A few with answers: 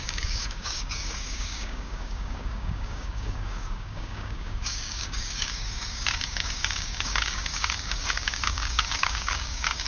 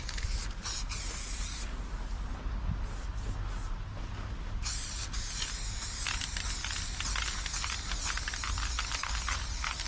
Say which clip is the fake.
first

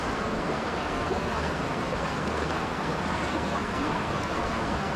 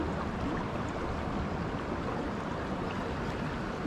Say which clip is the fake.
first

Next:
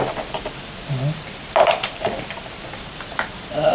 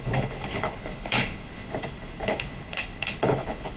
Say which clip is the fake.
second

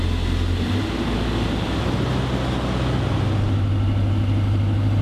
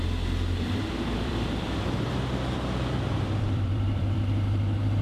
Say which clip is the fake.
second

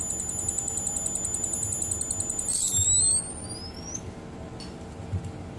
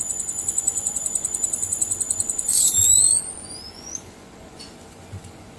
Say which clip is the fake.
second